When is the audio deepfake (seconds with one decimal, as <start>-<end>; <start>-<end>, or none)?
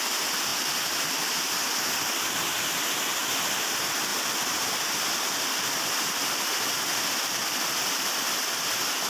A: 0.0-0.5; 3.0-4.1